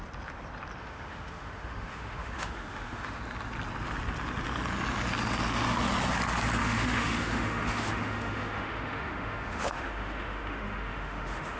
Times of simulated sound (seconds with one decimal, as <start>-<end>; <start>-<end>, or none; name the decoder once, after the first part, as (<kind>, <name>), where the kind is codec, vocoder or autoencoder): 0.8-3.2 (autoencoder, DAC-VAE); 6.6-11.6